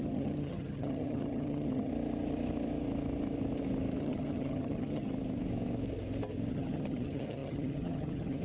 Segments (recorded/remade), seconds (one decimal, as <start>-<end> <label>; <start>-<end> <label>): 0.0-1.9 remade; 1.9-4.0 recorded; 4.0-5.1 remade; 5.1-6.5 recorded; 6.5-8.4 remade